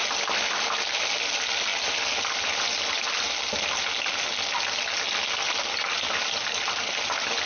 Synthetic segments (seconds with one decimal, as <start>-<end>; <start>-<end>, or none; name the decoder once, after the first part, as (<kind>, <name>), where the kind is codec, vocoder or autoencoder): 0.0-1.7 (vocoder, BigVGAN v2); 5.5-7.5